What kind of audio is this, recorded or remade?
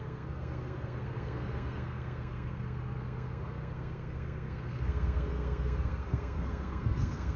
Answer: remade